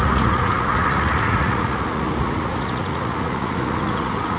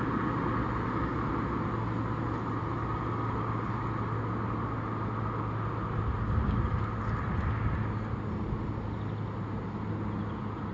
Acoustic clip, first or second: second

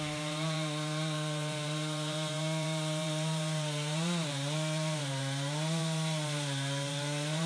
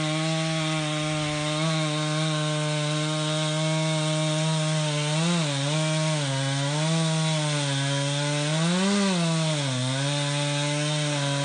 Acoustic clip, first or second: second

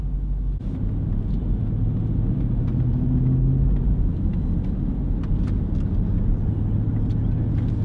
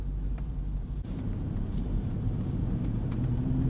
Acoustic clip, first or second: first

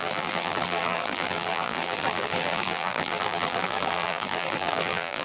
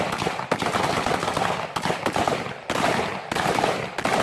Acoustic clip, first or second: second